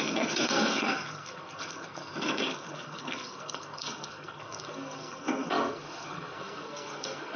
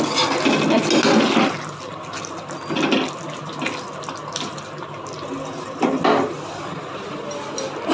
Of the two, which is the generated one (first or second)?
first